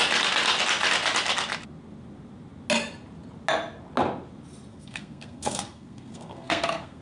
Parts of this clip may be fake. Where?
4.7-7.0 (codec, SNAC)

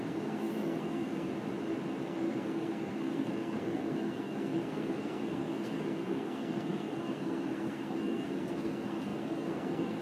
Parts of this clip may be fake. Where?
0.0-1.3 (codec, SNAC); 2.0-10.0

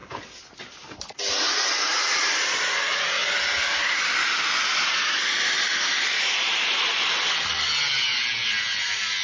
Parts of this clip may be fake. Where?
1.9-2.8 (vocoder, BigVGAN v2)